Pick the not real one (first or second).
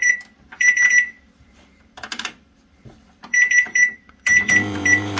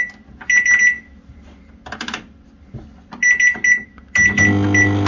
first